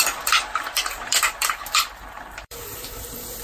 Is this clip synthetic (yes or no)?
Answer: yes